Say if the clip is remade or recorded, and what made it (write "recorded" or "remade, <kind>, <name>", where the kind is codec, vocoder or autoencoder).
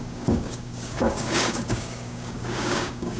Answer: remade, codec, DAC